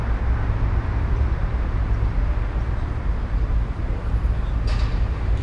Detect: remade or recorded recorded